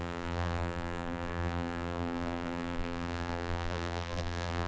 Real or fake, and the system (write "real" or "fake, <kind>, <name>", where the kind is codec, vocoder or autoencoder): fake, vocoder, BigVGAN v2